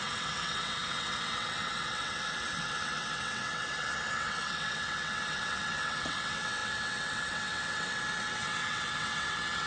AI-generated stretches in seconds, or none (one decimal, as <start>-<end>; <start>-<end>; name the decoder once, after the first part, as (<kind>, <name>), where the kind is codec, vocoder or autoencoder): 0.0-9.7 (vocoder, WaveNeXt)